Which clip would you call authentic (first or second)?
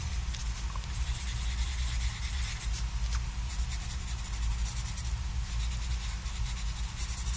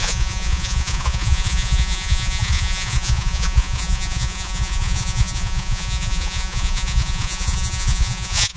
first